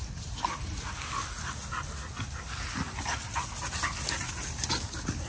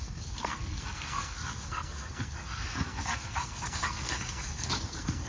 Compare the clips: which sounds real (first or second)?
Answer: first